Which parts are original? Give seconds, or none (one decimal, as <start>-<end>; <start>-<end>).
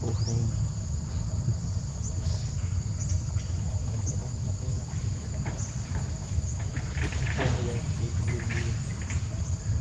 0.0-3.8; 5.5-6.2; 6.8-9.8